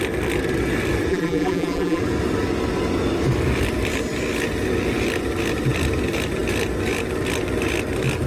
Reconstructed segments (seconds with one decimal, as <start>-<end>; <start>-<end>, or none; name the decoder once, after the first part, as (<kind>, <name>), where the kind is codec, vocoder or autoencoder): 1.1-2.0 (vocoder, BigVGAN v2)